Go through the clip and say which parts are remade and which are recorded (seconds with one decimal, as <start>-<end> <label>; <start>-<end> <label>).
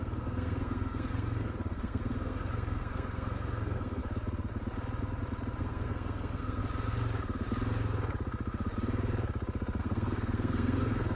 0.0-4.0 remade; 4.0-5.6 recorded; 5.6-6.6 remade; 6.6-9.8 recorded; 9.8-11.1 remade